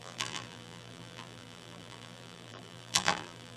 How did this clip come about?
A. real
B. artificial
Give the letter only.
B